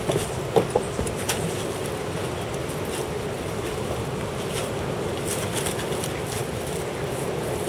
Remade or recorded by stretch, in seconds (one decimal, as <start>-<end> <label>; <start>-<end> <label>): 0.0-7.7 recorded